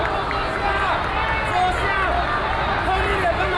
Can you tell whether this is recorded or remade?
recorded